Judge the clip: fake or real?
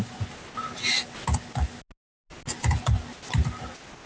real